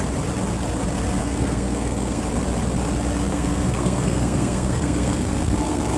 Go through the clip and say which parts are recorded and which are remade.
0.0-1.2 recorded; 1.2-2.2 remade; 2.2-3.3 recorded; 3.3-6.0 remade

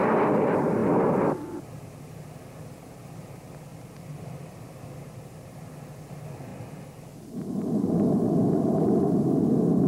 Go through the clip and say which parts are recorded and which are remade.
0.0-3.7 recorded; 3.7-5.7 remade; 5.7-6.5 recorded; 6.5-7.1 remade; 7.1-9.9 recorded

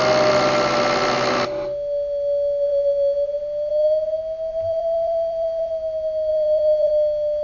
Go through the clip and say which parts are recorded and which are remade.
0.0-4.5 recorded; 4.5-5.7 remade; 5.7-6.3 recorded; 6.3-6.9 remade; 6.9-7.4 recorded

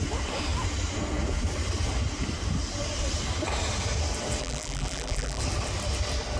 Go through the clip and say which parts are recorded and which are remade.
0.0-4.4 recorded; 4.4-5.4 remade; 5.4-6.4 recorded